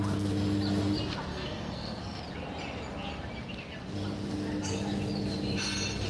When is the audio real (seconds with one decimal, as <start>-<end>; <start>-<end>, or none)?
0.0-1.3; 2.2-6.1